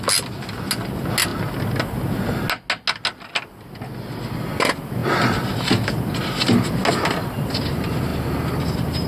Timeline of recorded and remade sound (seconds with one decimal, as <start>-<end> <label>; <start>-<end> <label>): 0.0-9.1 recorded